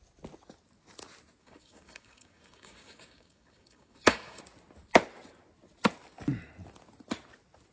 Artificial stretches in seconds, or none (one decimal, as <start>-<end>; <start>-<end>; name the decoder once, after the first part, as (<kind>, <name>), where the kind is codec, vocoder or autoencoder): 1.4-4.4 (codec, DAC)